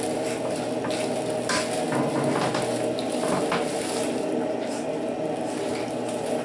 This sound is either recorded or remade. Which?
recorded